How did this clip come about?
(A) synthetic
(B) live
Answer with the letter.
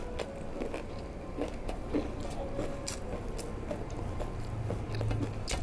B